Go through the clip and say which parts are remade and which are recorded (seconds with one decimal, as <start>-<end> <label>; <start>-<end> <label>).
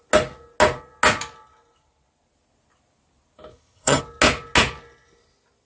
0.0-3.5 recorded; 3.5-4.0 remade; 4.0-5.7 recorded